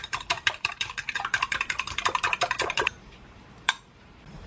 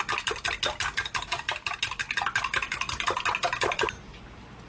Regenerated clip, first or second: first